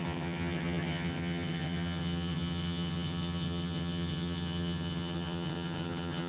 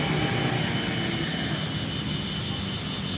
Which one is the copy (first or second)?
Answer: first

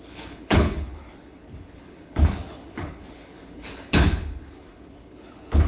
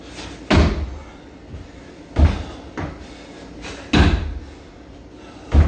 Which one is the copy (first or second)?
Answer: first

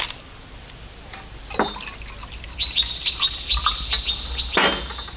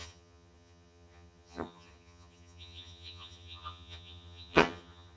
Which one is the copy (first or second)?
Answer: second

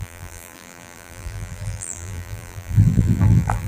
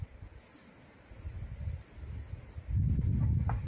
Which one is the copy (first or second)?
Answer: first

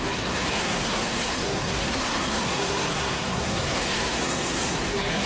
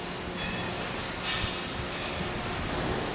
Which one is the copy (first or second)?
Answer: first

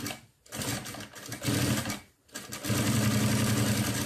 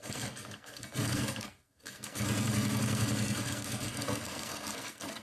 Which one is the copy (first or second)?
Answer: second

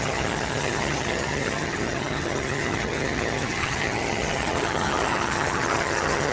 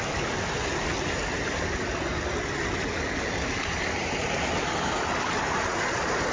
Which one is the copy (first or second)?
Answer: first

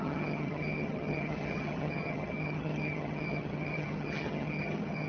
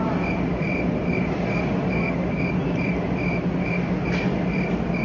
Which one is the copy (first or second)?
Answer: first